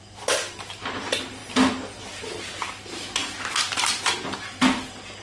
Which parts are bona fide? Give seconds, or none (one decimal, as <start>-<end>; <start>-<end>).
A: 0.0-5.2